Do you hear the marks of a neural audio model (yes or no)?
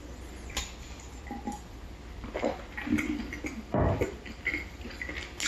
no